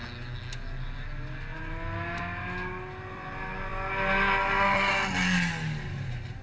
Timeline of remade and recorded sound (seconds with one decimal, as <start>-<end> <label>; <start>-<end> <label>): 0.0-1.5 recorded; 1.5-2.2 remade; 2.2-6.4 recorded